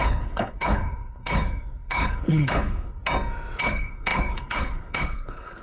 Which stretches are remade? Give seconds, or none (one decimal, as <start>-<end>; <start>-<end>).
0.0-3.0; 3.6-5.6